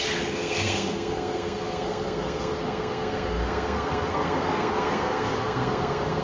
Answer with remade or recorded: remade